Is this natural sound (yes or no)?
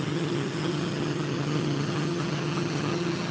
no